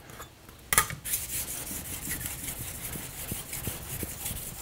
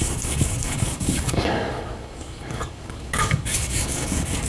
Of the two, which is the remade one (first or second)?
second